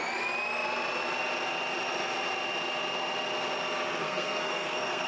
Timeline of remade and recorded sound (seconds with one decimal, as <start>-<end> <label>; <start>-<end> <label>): 0.0-4.0 recorded; 4.0-5.1 remade